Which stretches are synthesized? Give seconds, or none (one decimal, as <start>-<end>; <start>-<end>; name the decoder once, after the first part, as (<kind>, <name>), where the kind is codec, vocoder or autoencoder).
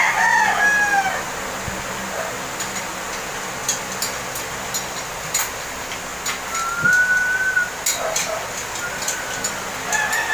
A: none